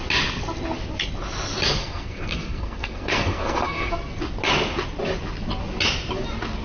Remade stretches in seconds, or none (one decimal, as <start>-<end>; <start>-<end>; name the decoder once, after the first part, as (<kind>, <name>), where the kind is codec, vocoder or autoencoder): 1.8-3.9 (codec, SNAC)